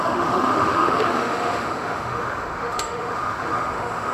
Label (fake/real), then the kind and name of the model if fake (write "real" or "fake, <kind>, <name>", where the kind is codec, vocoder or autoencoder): fake, autoencoder, DAC-VAE